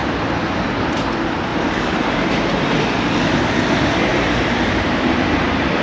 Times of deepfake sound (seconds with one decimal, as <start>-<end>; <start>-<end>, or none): 1.5-2.7; 4.1-5.8

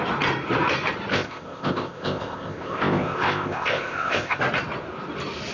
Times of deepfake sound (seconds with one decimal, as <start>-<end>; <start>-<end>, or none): 1.1-4.4